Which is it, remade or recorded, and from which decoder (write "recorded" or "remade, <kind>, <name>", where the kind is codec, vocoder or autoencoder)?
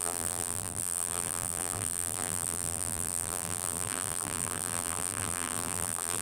remade, vocoder, BigVGAN v2